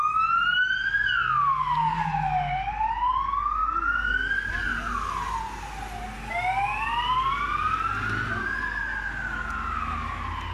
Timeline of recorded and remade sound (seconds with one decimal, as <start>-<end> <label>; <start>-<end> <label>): 0.0-10.5 recorded